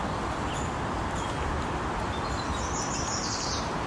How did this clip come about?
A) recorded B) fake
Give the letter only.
A